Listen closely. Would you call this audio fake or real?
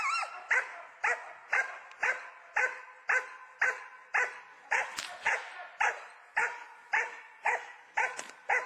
real